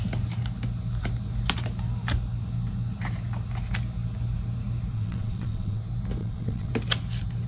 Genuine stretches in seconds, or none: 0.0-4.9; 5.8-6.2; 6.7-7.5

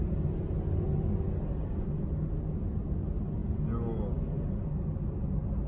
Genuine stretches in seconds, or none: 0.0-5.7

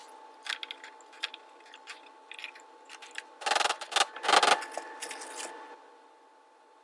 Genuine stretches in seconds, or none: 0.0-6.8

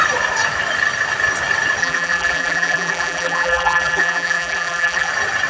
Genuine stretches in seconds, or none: 0.0-1.8; 5.1-5.5

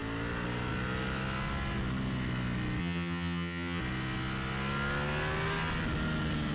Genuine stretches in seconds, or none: 0.0-2.8; 3.8-6.5